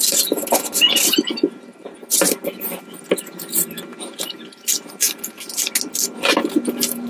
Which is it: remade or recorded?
recorded